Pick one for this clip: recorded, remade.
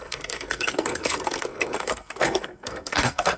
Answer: remade